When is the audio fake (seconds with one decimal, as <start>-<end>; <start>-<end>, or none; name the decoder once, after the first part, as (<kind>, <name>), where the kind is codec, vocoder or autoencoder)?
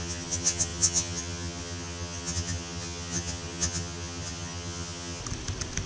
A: 0.0-5.2 (vocoder, HiFi-GAN)